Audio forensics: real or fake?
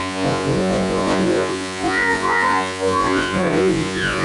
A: fake